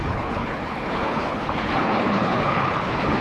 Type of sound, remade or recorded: remade